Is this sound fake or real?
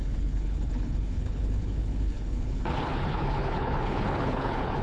fake